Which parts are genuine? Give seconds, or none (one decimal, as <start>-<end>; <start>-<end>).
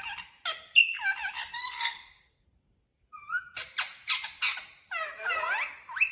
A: 0.0-1.5; 2.4-6.1